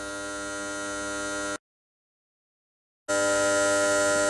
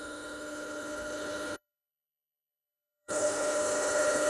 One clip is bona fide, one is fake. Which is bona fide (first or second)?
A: first